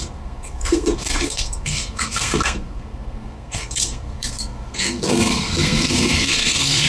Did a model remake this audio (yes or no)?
yes